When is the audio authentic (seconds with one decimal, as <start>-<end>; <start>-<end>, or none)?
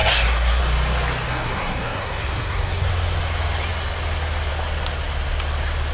0.6-1.3; 2.9-5.9